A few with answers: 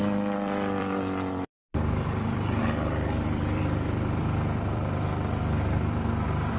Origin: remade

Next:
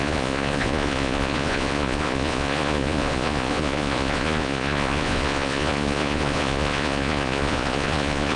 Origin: remade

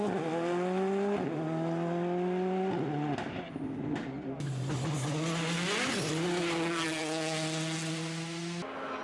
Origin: recorded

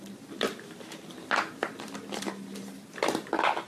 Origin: recorded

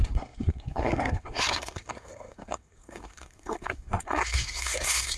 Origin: remade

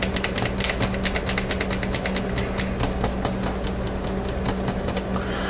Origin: recorded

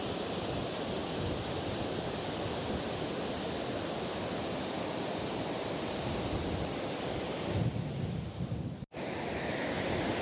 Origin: recorded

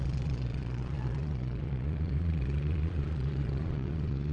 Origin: remade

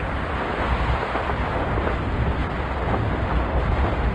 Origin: recorded